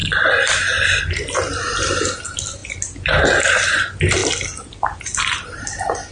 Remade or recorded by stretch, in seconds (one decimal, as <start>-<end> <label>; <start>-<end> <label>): 0.0-6.1 recorded